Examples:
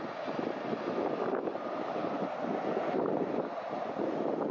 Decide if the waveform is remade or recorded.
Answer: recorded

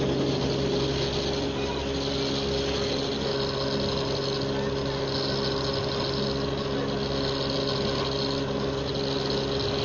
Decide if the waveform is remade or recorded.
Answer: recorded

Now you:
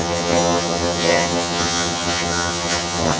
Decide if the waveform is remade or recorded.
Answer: remade